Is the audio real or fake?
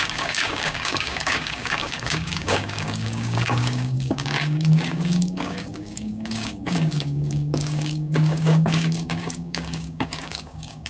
fake